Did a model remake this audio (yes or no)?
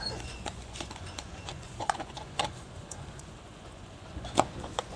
yes